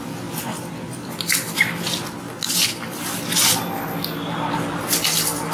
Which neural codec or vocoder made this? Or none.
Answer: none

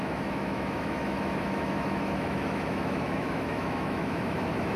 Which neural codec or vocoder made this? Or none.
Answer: autoencoder, DAC-VAE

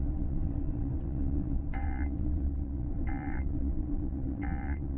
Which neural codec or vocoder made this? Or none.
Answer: vocoder, WaveNeXt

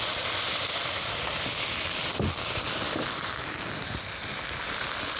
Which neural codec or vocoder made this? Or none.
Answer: none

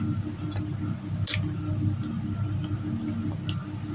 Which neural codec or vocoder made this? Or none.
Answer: none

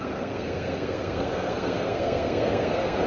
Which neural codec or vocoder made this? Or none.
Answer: codec, SNAC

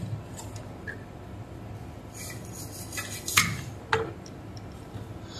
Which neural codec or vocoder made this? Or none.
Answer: none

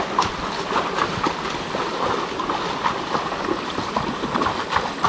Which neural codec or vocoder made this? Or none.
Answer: none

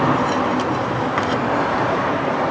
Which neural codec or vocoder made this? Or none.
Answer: none